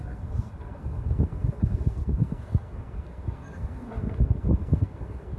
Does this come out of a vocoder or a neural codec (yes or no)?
yes